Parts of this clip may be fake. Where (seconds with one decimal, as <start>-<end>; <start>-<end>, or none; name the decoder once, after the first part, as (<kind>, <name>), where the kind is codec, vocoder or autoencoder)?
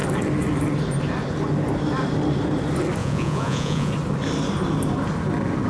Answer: 3.0-3.9 (vocoder, Vocos)